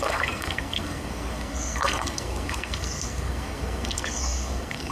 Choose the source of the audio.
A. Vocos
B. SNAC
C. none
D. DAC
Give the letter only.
B